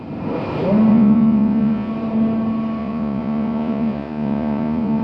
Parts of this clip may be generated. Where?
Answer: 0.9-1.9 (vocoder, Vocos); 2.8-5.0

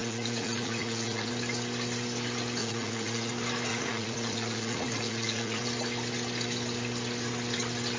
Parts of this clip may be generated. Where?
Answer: 0.0-1.3 (vocoder, Vocos); 2.6-3.3; 3.7-5.6

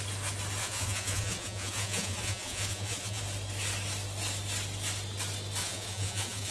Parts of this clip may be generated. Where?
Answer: 0.6-3.2 (vocoder, Vocos); 5.6-6.5

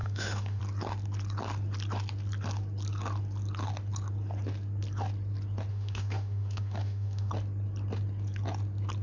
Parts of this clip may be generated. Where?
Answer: 0.0-0.6 (autoencoder, DAC-VAE); 5.7-7.3

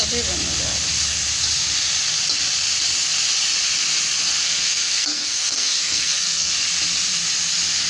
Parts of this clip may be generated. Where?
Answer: 4.4-6.5 (codec, SNAC)

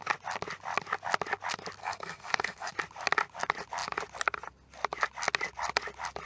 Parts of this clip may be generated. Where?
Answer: 1.8-2.7 (codec, SNAC)

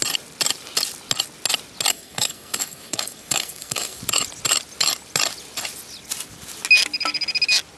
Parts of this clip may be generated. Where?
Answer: 1.9-4.0 (codec, SNAC)